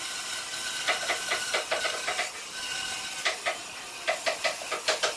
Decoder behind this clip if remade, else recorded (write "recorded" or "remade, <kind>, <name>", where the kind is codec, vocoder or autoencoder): recorded